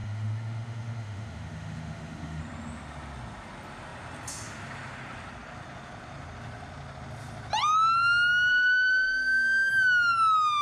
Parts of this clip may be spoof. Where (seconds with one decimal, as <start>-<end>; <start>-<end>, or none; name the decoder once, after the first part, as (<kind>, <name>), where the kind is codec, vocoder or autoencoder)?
0.0-2.4 (autoencoder, DAC-VAE); 8.5-9.7

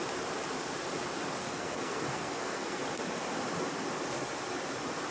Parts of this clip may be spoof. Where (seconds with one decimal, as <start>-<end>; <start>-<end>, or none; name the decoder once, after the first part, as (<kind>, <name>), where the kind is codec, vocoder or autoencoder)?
1.4-2.8 (codec, SNAC)

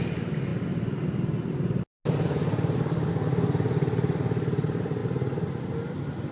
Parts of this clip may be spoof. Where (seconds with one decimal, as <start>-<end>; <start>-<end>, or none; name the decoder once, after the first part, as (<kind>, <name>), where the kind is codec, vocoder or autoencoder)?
none

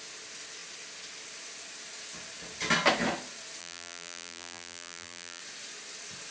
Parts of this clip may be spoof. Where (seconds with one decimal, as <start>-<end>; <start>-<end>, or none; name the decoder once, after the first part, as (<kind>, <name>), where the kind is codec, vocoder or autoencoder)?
3.6-5.4 (vocoder, BigVGAN v2)

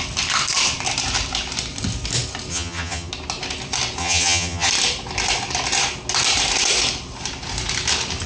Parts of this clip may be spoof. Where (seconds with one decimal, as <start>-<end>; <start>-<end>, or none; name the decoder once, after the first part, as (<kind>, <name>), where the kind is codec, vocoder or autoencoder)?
2.5-3.1 (vocoder, HiFi-GAN); 4.0-4.7

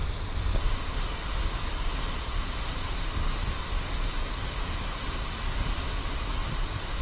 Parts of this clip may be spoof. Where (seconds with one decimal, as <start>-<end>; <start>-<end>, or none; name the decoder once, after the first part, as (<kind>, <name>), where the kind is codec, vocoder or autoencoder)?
6.4-7.0 (vocoder, BigVGAN v2)

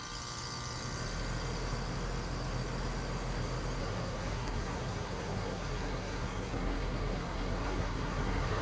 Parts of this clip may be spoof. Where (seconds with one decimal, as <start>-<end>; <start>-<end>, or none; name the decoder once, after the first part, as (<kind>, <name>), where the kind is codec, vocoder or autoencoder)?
3.8-8.6 (codec, SNAC)

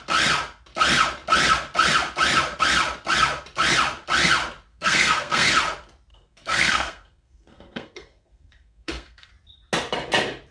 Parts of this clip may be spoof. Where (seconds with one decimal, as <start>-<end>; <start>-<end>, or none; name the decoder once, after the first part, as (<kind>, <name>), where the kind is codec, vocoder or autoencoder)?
4.7-5.5 (codec, SNAC); 6.1-9.3